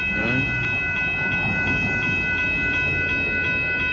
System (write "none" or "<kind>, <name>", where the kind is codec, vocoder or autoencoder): none